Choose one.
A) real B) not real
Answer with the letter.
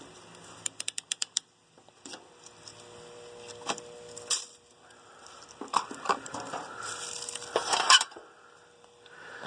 B